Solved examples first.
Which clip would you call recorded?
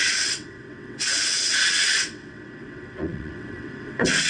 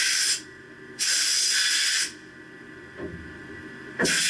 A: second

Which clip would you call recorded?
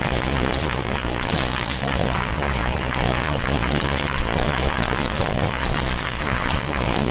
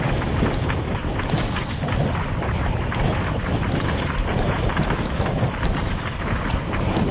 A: second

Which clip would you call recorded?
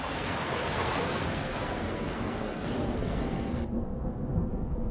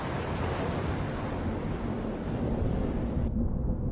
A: second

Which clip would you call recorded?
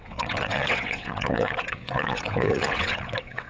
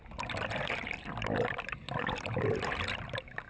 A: second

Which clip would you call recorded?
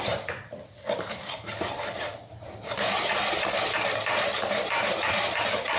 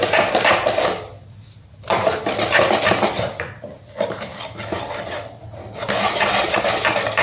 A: second